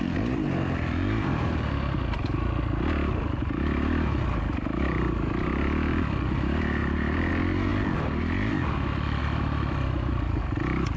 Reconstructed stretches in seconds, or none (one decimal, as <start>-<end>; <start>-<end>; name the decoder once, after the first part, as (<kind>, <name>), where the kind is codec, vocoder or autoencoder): 6.8-7.3 (vocoder, BigVGAN v2); 9.2-10.4